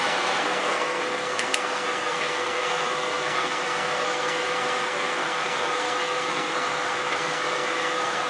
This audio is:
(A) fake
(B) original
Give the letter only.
A